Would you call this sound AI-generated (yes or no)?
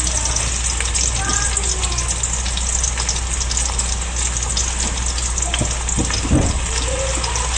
no